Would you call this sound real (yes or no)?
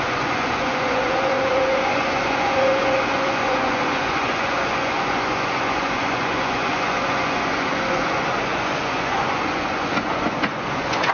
no